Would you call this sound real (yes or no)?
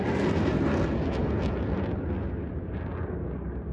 yes